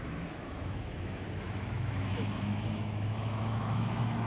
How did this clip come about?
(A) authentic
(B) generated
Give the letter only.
B